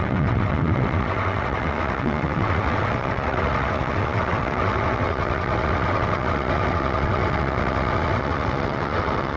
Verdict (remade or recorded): remade